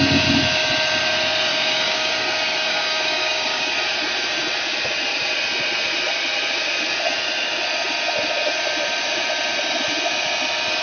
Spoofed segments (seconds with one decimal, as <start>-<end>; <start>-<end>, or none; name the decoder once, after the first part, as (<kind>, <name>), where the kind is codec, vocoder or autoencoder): 1.5-2.1 (codec, DAC); 2.6-3.7